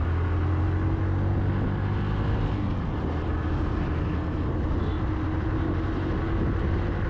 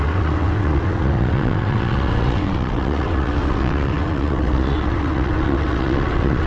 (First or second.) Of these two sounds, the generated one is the second